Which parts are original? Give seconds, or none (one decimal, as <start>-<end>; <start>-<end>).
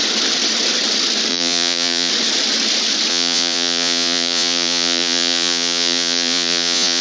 0.0-1.3; 2.1-3.1